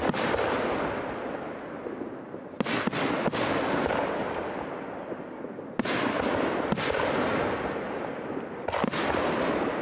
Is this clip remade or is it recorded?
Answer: recorded